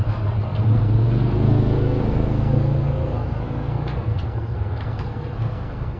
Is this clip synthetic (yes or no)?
yes